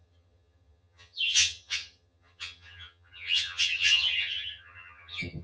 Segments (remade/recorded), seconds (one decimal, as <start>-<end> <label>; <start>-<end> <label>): 0.0-5.4 remade